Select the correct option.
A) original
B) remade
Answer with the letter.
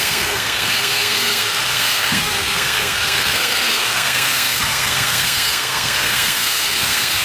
B